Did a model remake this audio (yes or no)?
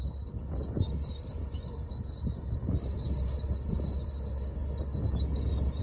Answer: no